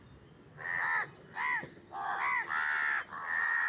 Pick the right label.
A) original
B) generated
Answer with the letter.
A